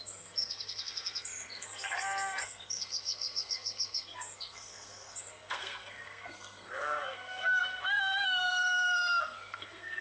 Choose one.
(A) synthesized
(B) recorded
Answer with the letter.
A